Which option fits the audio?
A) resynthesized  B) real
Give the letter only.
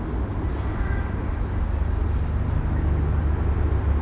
B